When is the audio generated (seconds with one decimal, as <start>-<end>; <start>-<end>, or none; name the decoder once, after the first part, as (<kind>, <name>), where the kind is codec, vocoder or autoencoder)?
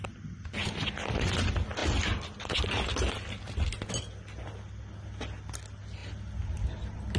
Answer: none